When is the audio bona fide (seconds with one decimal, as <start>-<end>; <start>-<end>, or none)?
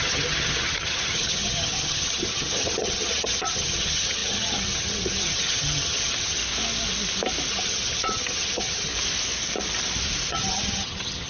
6.4-7.5; 8.9-10.3